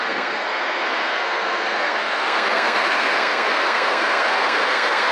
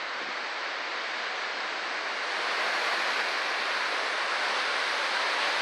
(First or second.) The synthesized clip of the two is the first